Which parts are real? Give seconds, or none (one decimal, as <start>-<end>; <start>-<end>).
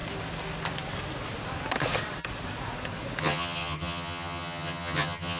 0.0-3.2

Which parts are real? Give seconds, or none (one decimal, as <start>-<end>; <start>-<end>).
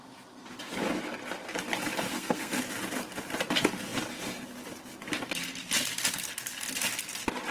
0.0-2.1; 2.6-7.5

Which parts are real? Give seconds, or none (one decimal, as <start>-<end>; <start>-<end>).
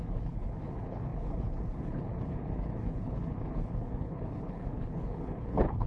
none